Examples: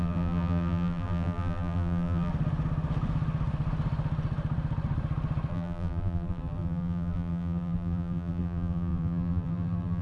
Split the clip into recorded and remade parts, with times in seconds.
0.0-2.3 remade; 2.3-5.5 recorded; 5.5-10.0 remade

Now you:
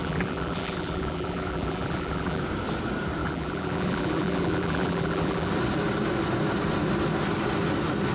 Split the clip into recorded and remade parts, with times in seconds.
0.0-2.4 remade; 2.4-3.2 recorded; 3.2-5.5 remade; 5.5-8.1 recorded

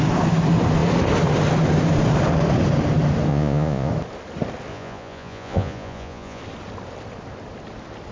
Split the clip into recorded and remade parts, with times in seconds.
0.0-3.3 recorded; 3.3-3.9 remade; 3.9-4.7 recorded; 4.7-6.4 remade; 6.4-8.1 recorded

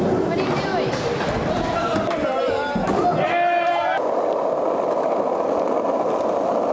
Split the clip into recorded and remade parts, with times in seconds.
0.0-0.7 remade; 0.7-4.7 recorded; 4.7-6.7 remade

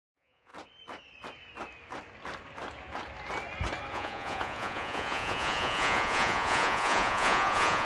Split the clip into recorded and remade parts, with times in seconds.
0.0-0.5 remade; 0.5-3.9 recorded; 3.9-7.8 remade

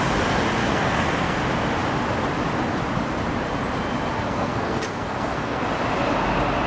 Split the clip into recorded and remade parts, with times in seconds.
0.0-0.6 recorded; 0.6-1.4 remade; 1.4-4.2 recorded; 4.2-5.6 remade; 5.6-6.7 recorded